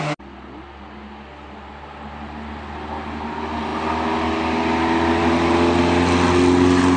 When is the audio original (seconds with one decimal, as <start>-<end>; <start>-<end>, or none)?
0.0-7.0